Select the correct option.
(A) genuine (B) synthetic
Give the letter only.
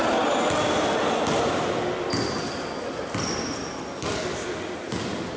A